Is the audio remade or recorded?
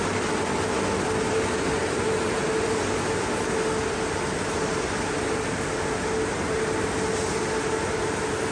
recorded